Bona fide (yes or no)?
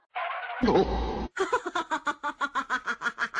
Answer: yes